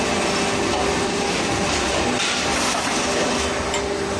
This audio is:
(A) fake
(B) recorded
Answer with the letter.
B